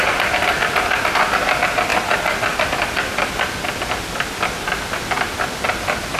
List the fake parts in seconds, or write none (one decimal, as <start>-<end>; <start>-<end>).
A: none

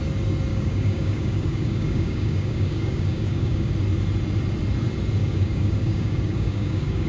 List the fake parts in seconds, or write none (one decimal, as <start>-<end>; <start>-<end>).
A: 0.5-3.7; 5.2-7.1

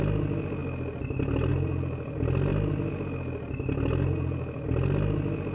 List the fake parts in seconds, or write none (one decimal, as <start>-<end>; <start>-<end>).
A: none

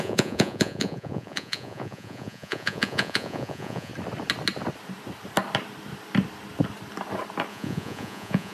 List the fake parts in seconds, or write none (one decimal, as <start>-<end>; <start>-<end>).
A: 0.0-3.9; 7.5-8.5

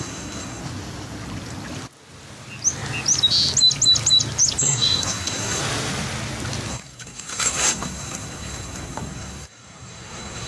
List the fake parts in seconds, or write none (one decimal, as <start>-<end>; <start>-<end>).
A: 0.0-0.6; 4.6-5.6; 6.7-10.5

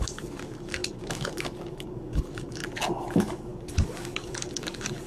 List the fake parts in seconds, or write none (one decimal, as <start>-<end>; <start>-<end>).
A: 0.0-2.6; 3.1-5.1

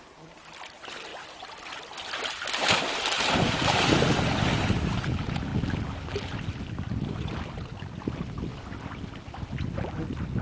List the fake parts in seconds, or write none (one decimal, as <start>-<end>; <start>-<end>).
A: none